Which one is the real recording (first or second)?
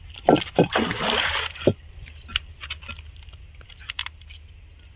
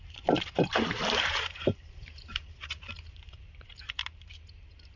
first